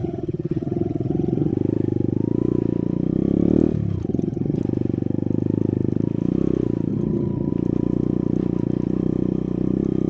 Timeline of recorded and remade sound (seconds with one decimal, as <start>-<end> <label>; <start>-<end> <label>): 0.0-1.5 remade; 1.5-4.1 recorded; 4.1-4.6 remade; 4.6-6.9 recorded; 6.9-7.5 remade; 7.5-10.1 recorded